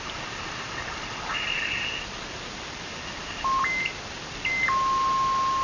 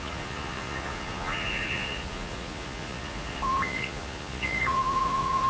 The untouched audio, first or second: first